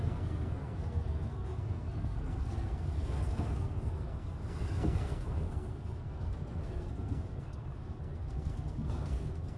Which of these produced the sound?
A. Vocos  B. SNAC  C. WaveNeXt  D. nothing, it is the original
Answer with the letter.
B